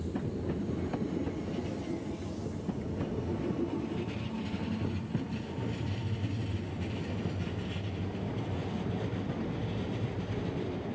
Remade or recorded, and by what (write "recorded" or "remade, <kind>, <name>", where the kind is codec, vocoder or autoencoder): recorded